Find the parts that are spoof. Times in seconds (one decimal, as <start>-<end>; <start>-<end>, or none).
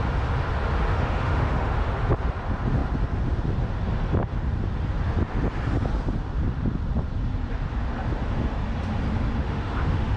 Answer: 0.9-1.9; 9.4-10.2